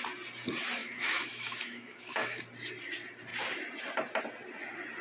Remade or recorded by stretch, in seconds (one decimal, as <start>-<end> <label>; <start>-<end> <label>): 0.0-0.8 recorded; 0.8-2.4 remade; 2.4-5.0 recorded